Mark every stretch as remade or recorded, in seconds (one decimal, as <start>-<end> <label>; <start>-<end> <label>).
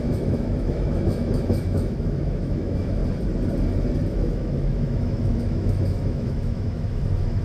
0.0-3.0 remade; 3.0-4.1 recorded; 4.1-7.4 remade